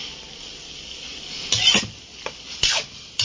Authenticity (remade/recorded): recorded